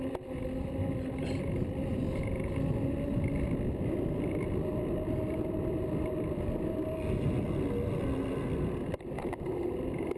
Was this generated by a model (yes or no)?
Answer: no